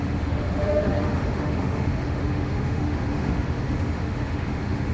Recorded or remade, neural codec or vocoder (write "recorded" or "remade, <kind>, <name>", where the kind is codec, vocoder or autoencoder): remade, autoencoder, DAC-VAE